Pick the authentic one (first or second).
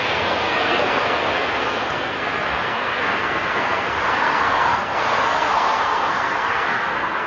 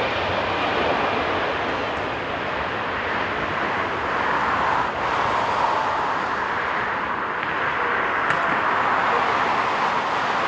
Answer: second